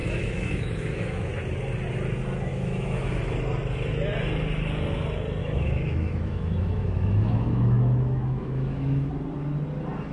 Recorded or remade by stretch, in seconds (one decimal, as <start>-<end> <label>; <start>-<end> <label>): 0.0-1.3 remade; 1.3-2.5 recorded; 2.5-3.1 remade; 3.1-5.4 recorded; 5.4-9.1 remade; 9.1-10.1 recorded